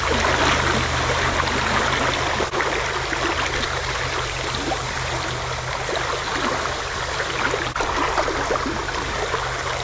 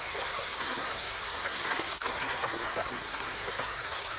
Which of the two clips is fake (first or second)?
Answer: second